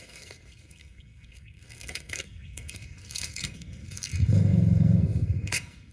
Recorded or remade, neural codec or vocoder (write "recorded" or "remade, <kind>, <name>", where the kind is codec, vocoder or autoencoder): remade, codec, SNAC